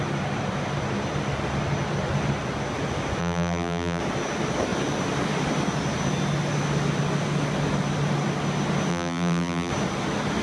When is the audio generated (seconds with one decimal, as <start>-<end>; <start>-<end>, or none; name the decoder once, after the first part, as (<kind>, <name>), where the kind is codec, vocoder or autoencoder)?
3.2-4.0 (vocoder, BigVGAN v2); 8.9-9.7